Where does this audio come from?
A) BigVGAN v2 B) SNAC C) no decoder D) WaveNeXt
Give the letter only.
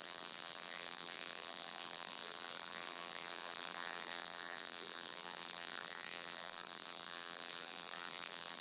A